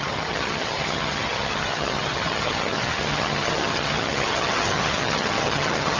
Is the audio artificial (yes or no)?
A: yes